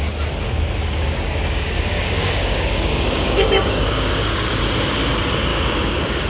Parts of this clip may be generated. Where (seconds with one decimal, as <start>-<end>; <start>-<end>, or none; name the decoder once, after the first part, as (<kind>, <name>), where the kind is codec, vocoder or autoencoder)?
0.8-4.6 (codec, DAC); 5.5-6.3